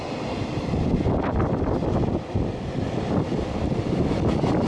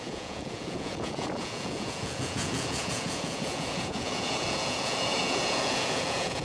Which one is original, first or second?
first